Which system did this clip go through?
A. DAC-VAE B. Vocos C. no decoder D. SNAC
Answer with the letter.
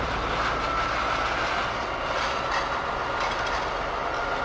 C